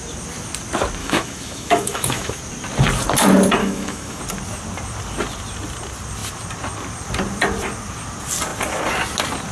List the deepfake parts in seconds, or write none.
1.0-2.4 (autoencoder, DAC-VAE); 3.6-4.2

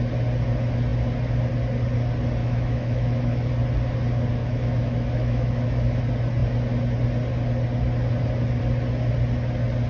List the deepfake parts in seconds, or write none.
2.4-3.5 (autoencoder, DAC-VAE); 4.4-6.0

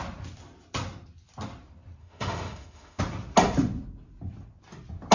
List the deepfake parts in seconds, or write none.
2.0-3.0 (autoencoder, DAC-VAE)